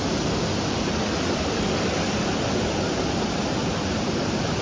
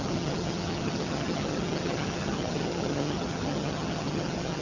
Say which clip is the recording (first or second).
first